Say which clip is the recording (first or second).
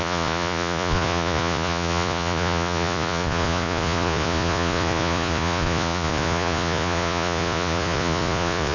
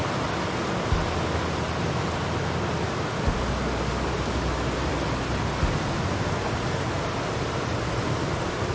second